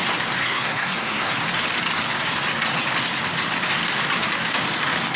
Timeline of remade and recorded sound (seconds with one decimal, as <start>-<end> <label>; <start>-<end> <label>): 0.0-0.4 recorded; 0.4-1.3 remade; 1.3-5.2 recorded